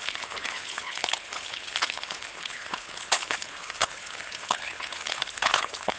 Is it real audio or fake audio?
fake